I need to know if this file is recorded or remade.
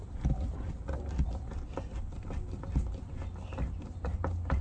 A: recorded